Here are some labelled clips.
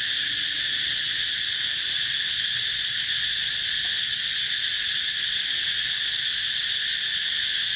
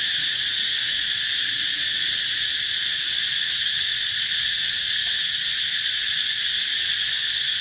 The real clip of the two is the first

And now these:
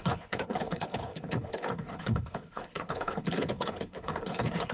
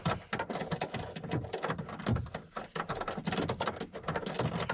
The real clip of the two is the second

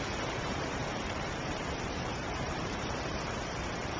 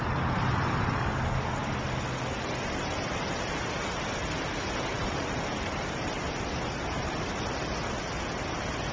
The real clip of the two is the second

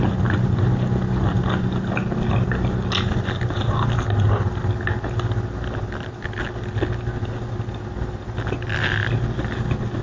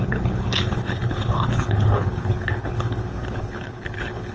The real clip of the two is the first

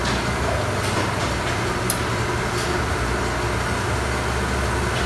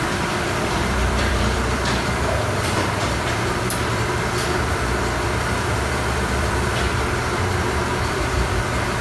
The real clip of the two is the first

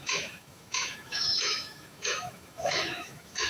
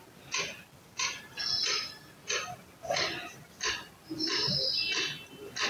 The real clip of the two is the second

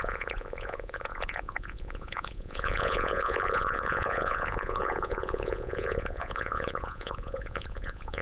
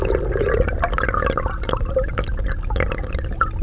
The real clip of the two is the second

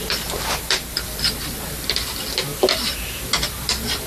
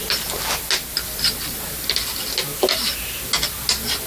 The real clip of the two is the second